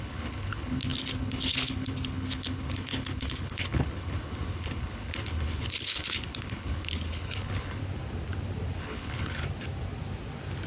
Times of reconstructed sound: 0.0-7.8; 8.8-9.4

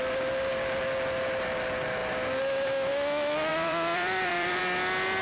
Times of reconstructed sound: 3.5-4.6

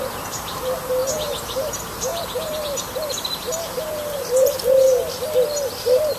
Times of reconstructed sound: 0.0-4.9; 5.8-6.2